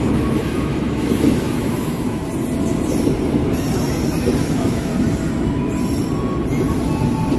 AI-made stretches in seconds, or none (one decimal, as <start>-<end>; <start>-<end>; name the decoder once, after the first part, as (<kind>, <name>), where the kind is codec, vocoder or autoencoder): 0.0-2.2 (autoencoder, DAC-VAE); 4.4-4.9